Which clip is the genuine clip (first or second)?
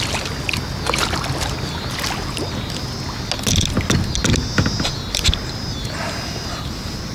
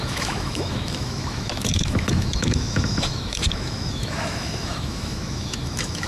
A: first